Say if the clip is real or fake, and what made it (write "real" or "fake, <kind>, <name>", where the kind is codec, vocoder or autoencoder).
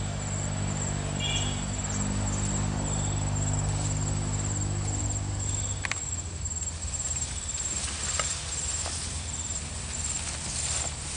real